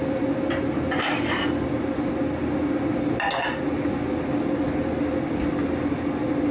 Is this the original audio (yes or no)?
yes